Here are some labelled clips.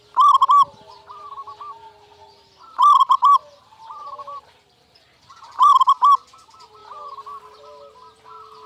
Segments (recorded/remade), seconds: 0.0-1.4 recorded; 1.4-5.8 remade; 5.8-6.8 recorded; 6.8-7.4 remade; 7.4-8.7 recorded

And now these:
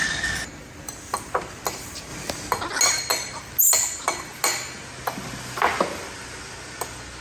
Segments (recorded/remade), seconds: 0.0-7.2 recorded